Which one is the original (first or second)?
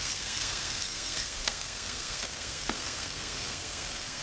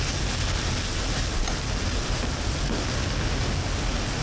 second